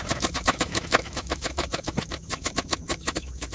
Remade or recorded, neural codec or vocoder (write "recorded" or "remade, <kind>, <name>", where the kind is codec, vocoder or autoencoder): remade, autoencoder, DAC-VAE